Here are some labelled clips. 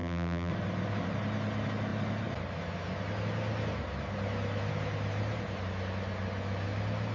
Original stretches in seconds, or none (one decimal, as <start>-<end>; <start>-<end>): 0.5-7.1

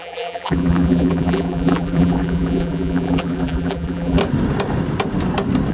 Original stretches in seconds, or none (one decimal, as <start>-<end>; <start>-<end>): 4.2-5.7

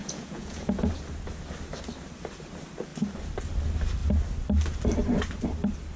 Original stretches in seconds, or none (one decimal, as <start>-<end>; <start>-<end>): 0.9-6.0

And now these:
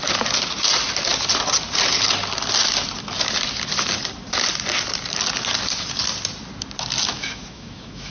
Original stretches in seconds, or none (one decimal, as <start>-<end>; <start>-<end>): 0.0-7.1